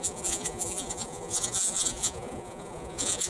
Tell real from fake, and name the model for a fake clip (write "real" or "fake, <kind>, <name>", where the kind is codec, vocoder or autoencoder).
fake, vocoder, Vocos